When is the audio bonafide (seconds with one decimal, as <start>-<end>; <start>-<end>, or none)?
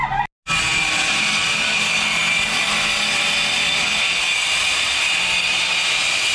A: 0.0-6.3